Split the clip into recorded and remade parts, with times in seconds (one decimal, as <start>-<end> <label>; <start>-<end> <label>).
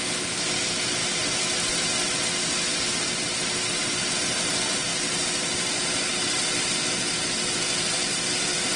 0.0-8.8 recorded